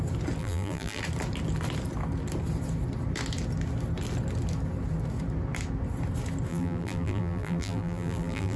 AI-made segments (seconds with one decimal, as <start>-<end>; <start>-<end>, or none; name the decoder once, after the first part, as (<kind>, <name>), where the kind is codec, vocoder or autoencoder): 0.4-1.0 (vocoder, BigVGAN v2); 6.5-8.6